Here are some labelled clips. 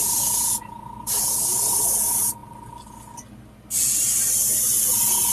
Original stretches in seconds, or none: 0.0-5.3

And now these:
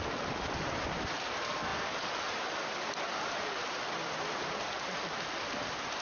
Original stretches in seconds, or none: 1.7-3.9

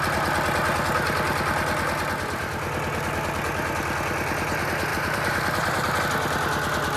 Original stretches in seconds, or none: 0.0-4.9; 6.0-7.0

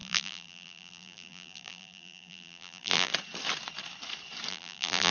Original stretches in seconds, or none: 3.1-4.5

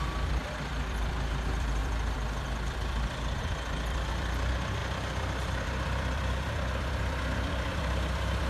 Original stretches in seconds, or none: none